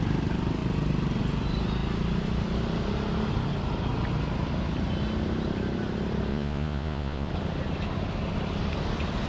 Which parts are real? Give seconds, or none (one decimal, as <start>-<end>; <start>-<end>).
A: 0.0-6.3; 7.3-9.3